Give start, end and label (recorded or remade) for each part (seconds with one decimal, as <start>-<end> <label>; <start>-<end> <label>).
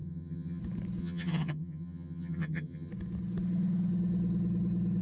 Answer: 0.0-0.6 remade; 0.6-1.0 recorded; 1.0-2.9 remade; 2.9-5.0 recorded